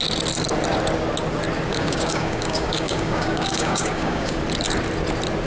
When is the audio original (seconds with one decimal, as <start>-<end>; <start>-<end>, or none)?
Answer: 0.0-1.7; 4.4-5.5